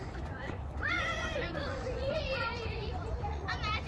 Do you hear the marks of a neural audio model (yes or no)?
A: yes